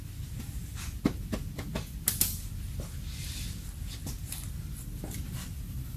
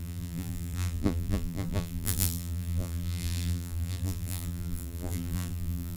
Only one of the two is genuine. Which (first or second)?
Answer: first